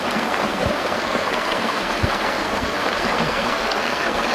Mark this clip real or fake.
fake